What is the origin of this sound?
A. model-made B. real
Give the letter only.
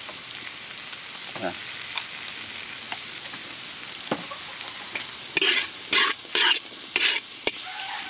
B